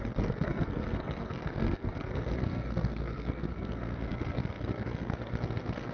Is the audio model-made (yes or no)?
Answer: yes